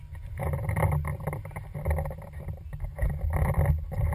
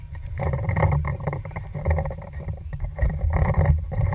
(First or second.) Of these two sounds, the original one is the first